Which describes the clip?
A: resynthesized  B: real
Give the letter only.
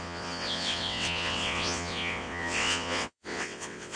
A